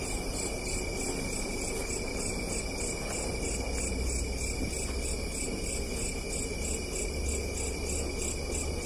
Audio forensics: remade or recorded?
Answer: recorded